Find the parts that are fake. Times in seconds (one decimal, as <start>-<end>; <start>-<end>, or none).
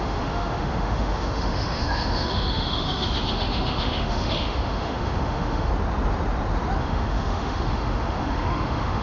0.0-5.7; 6.8-9.0